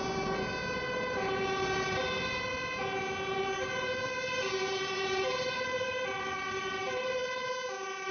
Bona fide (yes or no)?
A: yes